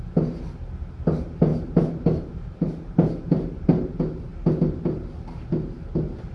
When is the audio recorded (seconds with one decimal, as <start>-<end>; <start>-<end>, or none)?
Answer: 0.0-1.5; 3.9-6.3